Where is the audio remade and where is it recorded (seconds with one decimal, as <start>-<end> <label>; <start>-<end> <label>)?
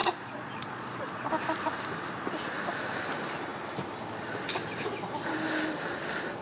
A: 0.0-1.3 remade; 1.3-6.4 recorded